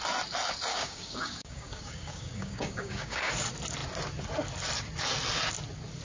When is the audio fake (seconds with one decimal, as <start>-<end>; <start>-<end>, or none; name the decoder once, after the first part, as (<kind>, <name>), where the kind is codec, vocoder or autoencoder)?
0.7-3.3 (codec, DAC)